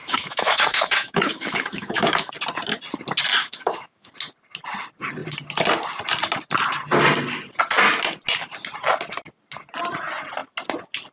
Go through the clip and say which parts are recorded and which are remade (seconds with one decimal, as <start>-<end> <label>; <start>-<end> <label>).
0.0-2.3 remade; 2.3-3.4 recorded; 3.4-4.1 remade; 4.1-11.1 recorded